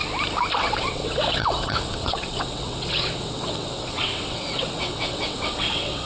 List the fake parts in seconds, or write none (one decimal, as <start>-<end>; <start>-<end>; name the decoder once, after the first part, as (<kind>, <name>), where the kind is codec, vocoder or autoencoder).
0.6-6.1 (vocoder, WaveNeXt)